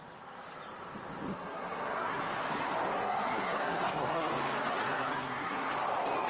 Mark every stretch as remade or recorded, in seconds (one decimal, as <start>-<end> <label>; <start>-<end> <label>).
0.0-1.3 recorded; 1.3-2.2 remade; 2.2-2.9 recorded; 2.9-4.3 remade; 4.3-4.7 recorded; 4.7-5.7 remade; 5.7-6.3 recorded